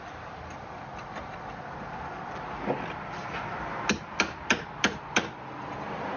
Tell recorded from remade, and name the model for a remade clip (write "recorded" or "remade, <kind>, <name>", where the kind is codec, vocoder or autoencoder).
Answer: recorded